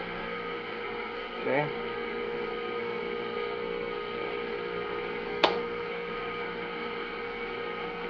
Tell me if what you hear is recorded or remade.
remade